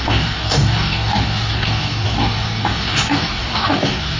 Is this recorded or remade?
remade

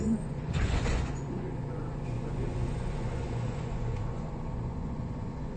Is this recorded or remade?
remade